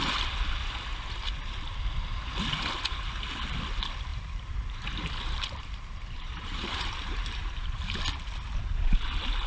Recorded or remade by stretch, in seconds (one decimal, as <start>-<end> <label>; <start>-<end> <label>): 0.0-4.1 recorded; 4.1-8.0 remade; 8.0-9.5 recorded